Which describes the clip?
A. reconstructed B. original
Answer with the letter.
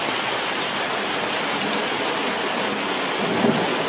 B